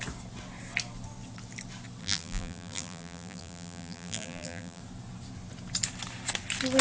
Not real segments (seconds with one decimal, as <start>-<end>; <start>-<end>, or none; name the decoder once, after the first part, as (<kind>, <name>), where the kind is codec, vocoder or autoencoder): 2.0-4.8 (vocoder, BigVGAN v2)